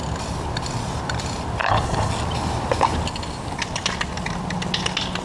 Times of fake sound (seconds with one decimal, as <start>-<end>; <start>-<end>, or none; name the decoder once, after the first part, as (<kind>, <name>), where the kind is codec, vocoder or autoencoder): 1.6-2.1 (codec, HILCodec)